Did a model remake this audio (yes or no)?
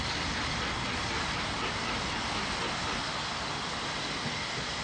no